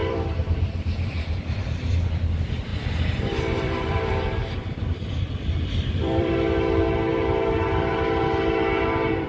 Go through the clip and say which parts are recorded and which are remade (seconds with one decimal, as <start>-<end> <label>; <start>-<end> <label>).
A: 0.0-2.0 remade; 2.0-2.7 recorded; 2.7-6.3 remade; 6.3-9.3 recorded